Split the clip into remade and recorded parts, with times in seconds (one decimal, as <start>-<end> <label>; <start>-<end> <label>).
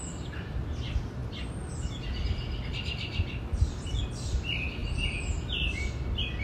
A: 0.0-6.4 recorded